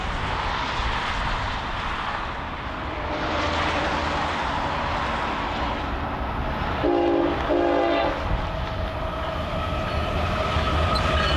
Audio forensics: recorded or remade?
recorded